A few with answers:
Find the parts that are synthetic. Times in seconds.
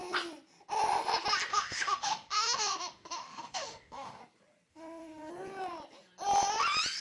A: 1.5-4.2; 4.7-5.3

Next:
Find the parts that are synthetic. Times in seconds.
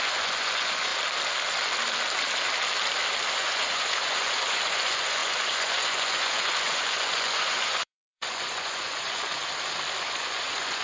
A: 0.0-0.9; 3.3-9.4; 10.0-10.8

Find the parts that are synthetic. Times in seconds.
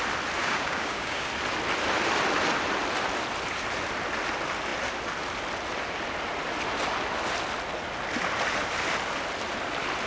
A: 0.4-1.3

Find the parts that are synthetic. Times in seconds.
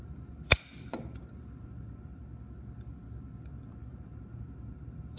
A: 0.0-2.2; 3.9-5.2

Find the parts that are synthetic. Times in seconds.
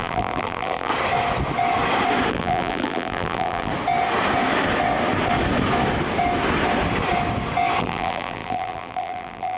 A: 0.0-0.9; 2.3-3.7; 7.8-9.6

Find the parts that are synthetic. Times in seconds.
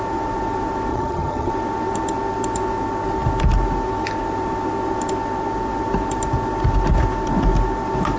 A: 0.9-1.5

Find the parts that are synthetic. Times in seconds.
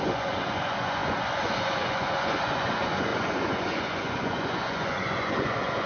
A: 0.0-5.9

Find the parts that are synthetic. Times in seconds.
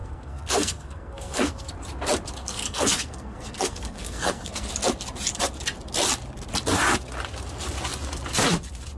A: 0.0-1.7; 2.4-4.7